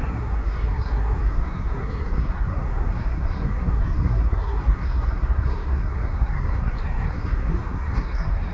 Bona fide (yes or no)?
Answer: no